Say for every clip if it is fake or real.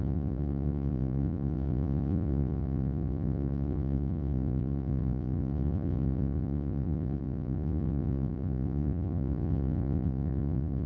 fake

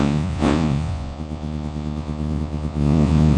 fake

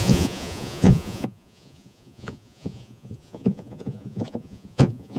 fake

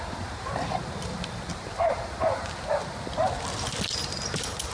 real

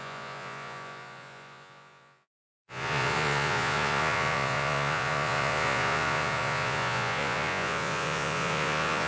fake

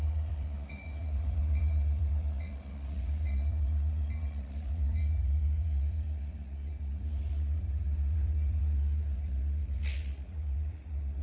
fake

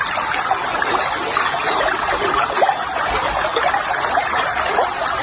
real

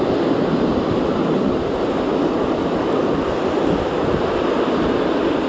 real